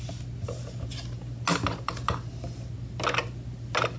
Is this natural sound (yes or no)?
yes